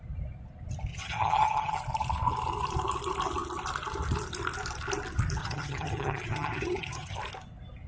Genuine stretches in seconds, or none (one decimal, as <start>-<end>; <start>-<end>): 0.0-0.9; 1.8-5.4; 7.2-7.9